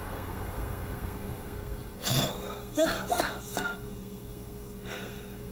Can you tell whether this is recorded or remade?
remade